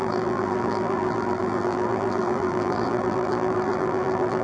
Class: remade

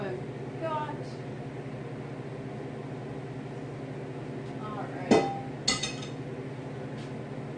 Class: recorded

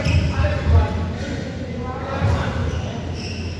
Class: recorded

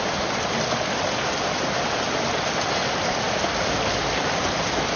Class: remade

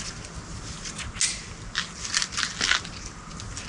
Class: recorded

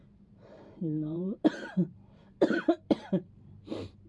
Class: remade